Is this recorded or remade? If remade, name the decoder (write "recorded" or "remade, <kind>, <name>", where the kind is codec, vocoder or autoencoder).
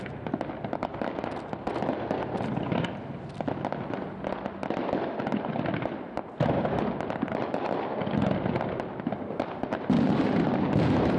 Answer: recorded